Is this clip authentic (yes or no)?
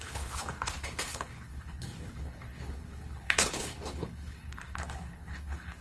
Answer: no